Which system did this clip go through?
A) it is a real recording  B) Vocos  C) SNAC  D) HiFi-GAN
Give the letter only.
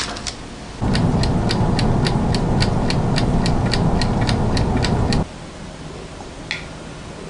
A